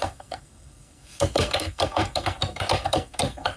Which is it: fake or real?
fake